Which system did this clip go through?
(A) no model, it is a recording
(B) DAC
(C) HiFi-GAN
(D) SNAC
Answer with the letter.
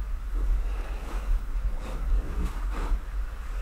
B